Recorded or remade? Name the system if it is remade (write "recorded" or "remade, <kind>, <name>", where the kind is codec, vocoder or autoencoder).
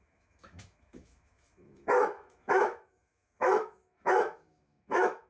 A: remade, autoencoder, DAC-VAE